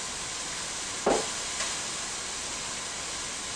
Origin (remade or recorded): recorded